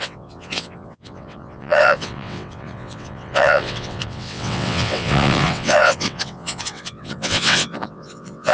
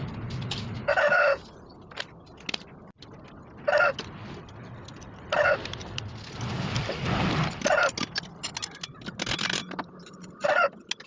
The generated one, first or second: first